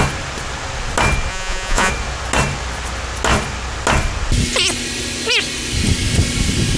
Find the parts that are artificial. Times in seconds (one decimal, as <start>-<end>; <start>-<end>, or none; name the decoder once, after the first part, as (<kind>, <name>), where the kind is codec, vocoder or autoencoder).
1.3-1.9 (vocoder, Vocos)